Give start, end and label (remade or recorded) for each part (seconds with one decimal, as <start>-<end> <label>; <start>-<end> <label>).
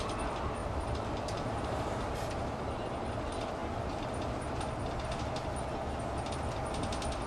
0.0-0.6 recorded; 0.6-2.1 remade; 2.1-7.3 recorded